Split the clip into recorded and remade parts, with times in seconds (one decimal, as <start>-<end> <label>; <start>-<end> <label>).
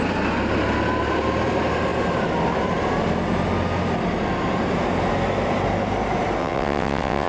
0.0-6.4 recorded; 6.4-7.3 remade